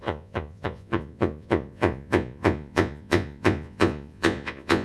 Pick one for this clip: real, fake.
fake